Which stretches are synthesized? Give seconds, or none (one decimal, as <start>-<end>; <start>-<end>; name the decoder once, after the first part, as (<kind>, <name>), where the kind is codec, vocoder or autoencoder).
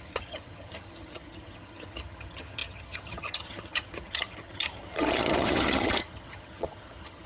0.0-7.3 (vocoder, HiFi-GAN)